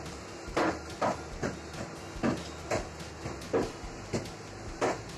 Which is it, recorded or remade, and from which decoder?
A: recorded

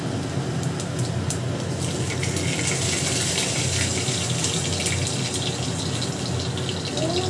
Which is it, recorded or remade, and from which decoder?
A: recorded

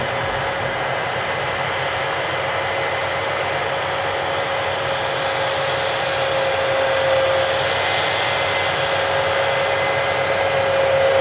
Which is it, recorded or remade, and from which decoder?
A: recorded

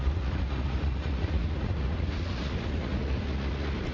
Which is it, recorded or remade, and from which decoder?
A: remade, vocoder, Vocos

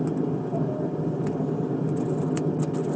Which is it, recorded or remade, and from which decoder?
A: recorded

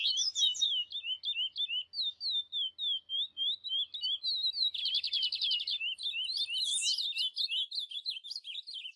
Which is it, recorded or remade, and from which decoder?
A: recorded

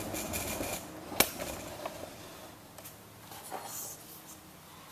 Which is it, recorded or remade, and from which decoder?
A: recorded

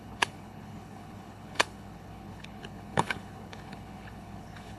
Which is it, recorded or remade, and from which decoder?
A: remade, codec, HILCodec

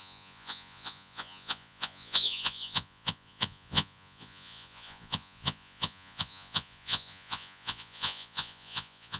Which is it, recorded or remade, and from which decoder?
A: remade, vocoder, Vocos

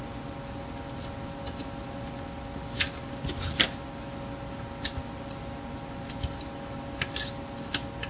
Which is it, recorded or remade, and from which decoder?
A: recorded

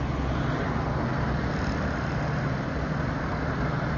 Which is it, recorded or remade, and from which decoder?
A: recorded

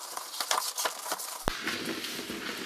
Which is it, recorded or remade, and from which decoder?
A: recorded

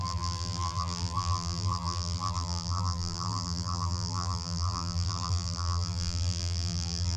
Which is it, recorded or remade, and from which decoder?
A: remade, vocoder, BigVGAN v2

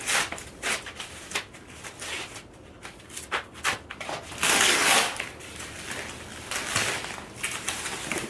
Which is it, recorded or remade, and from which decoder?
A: recorded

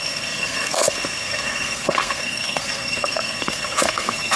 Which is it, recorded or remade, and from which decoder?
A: remade, codec, SNAC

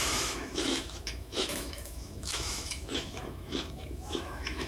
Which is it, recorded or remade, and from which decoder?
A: remade, autoencoder, DAC-VAE